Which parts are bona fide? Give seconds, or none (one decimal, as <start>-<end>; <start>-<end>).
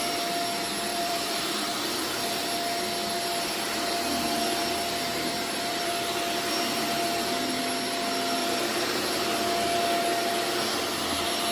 0.0-0.9; 2.1-5.1; 5.9-8.4; 9.2-11.5